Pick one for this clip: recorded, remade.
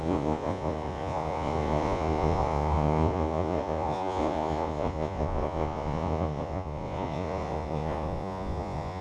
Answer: remade